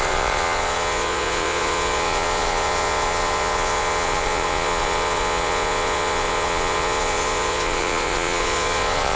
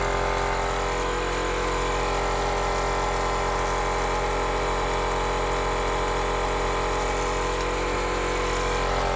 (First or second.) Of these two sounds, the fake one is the first